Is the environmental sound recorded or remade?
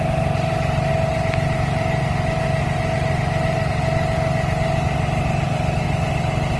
recorded